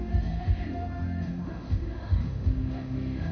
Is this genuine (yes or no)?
no